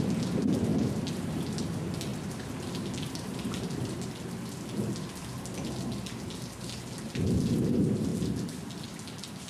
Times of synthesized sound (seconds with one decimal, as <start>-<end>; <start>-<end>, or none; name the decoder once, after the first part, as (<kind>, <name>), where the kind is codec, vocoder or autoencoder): none